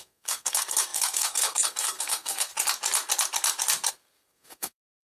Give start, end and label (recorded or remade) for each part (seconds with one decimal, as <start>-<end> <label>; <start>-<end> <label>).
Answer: 0.0-2.5 remade; 2.5-3.9 recorded; 3.9-5.0 remade